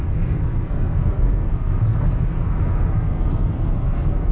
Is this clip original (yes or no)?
no